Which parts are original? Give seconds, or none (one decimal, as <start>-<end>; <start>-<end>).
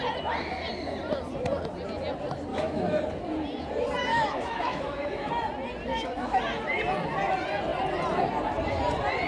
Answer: 0.0-2.5; 3.0-4.1; 5.3-5.9; 6.4-9.3